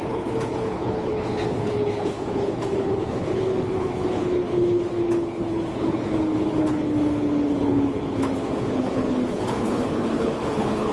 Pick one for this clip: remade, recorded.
remade